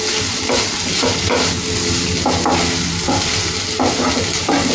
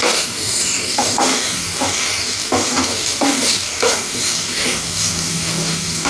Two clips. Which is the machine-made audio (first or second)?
second